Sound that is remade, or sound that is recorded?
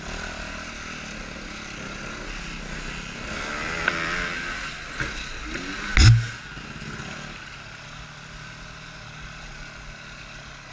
recorded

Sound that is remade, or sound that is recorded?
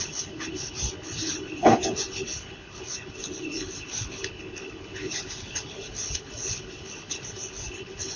remade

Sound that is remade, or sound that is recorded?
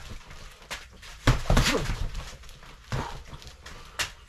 recorded